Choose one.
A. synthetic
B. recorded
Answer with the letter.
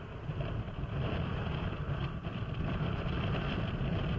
A